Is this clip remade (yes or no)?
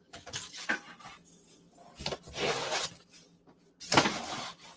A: no